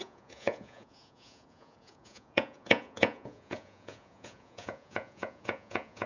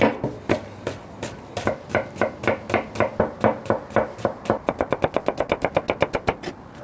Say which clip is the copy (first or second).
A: first